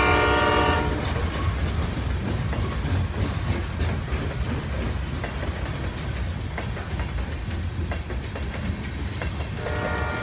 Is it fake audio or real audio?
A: real